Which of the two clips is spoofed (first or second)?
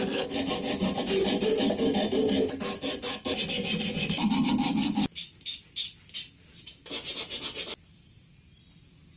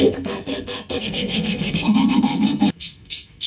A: second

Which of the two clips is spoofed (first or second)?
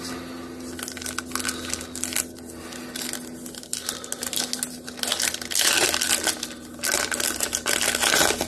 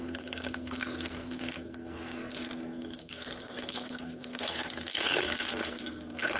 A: second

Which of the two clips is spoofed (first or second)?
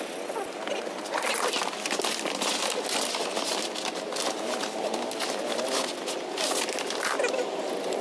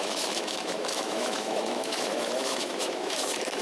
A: second